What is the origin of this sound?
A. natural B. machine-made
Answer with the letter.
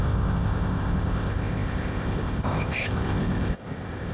B